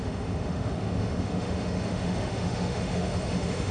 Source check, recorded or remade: remade